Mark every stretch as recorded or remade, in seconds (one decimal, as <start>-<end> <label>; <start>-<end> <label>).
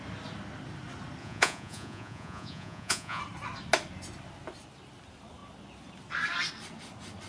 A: 0.0-1.2 recorded; 1.2-3.2 remade; 3.2-7.3 recorded